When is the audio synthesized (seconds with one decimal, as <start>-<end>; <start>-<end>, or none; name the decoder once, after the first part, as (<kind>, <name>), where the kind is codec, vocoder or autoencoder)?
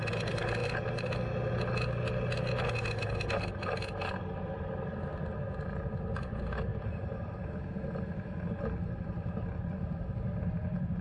0.6-1.1 (vocoder, BigVGAN v2); 6.7-7.5